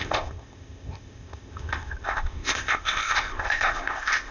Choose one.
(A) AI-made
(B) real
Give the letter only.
A